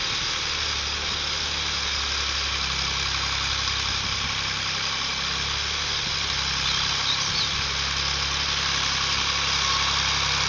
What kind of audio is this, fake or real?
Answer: real